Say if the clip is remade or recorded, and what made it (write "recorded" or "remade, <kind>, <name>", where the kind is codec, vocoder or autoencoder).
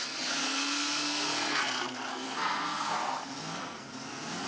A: remade, codec, SNAC